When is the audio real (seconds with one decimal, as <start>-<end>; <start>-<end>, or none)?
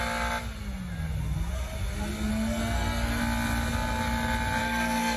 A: 0.0-2.3; 3.2-4.6